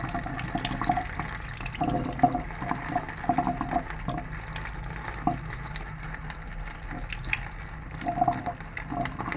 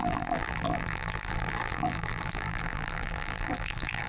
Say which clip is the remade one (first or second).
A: second